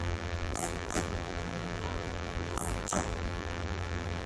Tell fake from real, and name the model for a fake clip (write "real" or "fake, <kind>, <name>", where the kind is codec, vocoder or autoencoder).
fake, vocoder, BigVGAN v2